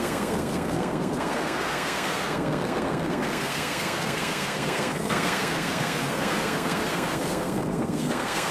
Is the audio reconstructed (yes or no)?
yes